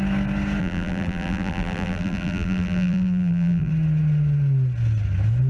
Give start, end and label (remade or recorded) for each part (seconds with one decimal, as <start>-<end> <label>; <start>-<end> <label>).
0.0-0.6 recorded; 0.6-3.7 remade; 3.7-5.5 recorded

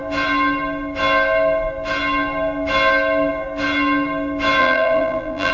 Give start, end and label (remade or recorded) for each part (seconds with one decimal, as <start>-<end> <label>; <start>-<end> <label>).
0.0-4.6 recorded; 4.6-5.5 remade

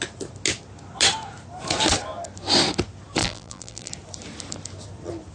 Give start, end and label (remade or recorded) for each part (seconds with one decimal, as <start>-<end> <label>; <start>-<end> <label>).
0.0-3.2 recorded; 3.2-3.9 remade; 3.9-5.3 recorded

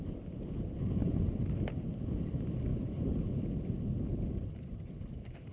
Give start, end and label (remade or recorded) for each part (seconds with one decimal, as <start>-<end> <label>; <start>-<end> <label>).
0.0-2.7 recorded; 2.7-3.6 remade; 3.6-4.1 recorded; 4.1-5.5 remade

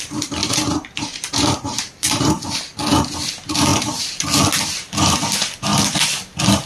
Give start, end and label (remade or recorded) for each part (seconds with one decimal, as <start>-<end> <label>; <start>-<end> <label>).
0.0-0.4 recorded; 0.4-2.6 remade; 2.6-6.7 recorded

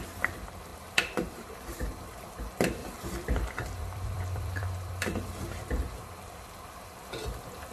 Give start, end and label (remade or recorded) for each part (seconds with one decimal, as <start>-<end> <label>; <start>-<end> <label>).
0.0-0.7 recorded; 0.7-2.3 remade; 2.3-2.8 recorded; 2.8-6.0 remade; 6.0-7.7 recorded

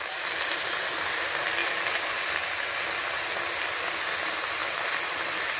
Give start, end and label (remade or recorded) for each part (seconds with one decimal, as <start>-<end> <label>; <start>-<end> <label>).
0.0-1.6 remade; 1.6-3.8 recorded; 3.8-5.6 remade

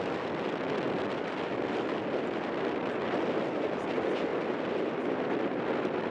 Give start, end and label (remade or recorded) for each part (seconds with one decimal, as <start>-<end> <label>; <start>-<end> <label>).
0.0-6.1 recorded